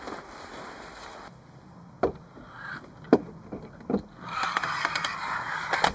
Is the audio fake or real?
real